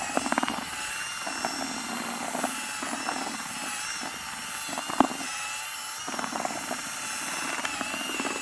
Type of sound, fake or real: real